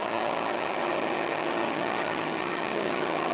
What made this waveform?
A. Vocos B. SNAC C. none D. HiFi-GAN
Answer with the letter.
D